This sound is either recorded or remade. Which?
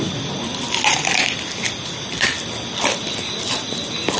recorded